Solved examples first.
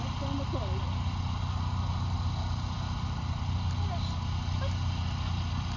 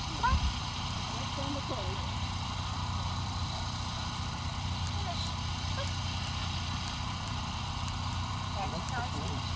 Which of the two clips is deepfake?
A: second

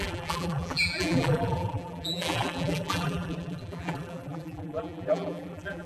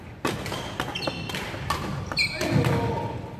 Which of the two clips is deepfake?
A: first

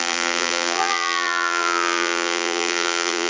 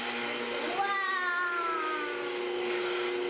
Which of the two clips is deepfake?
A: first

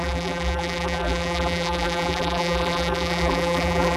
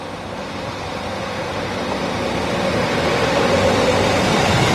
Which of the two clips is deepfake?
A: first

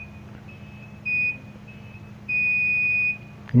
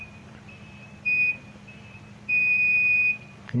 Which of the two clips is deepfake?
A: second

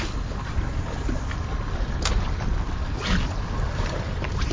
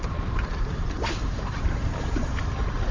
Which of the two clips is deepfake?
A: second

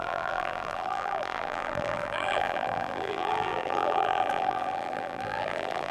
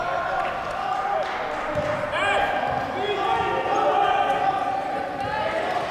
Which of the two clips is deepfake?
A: first